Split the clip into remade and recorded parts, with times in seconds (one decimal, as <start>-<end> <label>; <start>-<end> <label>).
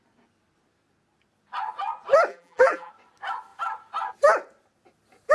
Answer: 0.0-2.3 recorded; 2.3-2.9 remade; 2.9-5.3 recorded